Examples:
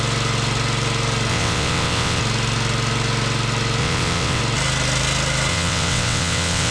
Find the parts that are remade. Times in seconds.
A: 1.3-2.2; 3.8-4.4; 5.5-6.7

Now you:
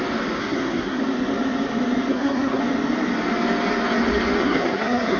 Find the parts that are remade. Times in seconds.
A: 0.4-1.0; 2.1-2.6; 4.4-5.2

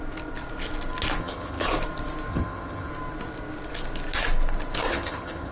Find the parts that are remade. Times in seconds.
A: 1.2-1.7; 2.3-2.9; 4.9-5.5

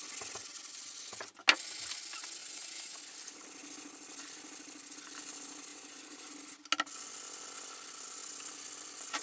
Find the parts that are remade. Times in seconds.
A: 2.4-3.0; 5.7-6.3

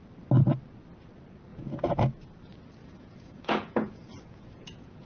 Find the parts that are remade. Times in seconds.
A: 1.5-2.1; 2.8-5.1

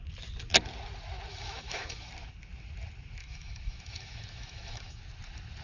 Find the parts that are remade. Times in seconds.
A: 1.3-2.1; 3.2-5.0